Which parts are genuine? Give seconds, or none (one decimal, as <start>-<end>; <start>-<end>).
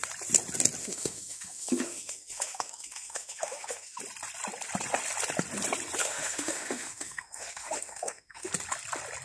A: 0.0-0.8; 4.0-6.0; 8.5-9.2